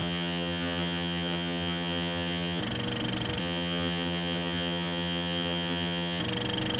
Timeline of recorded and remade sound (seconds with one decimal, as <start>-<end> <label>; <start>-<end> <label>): 0.0-2.6 remade; 2.6-3.4 recorded; 3.4-6.2 remade; 6.2-6.8 recorded

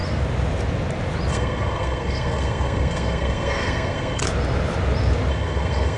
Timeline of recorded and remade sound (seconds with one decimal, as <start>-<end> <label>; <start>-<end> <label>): 0.0-1.3 recorded; 1.3-4.2 remade; 4.2-5.3 recorded; 5.3-6.0 remade